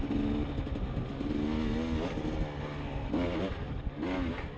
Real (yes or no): yes